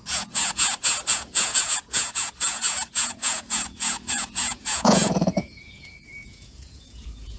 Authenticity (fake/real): fake